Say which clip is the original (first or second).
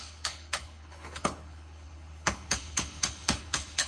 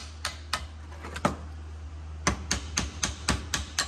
second